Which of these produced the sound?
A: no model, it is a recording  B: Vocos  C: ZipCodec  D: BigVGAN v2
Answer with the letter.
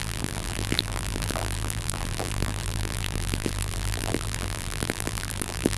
D